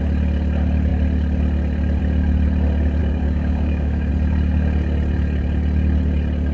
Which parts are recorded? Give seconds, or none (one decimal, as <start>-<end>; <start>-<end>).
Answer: 0.0-3.0; 4.1-6.5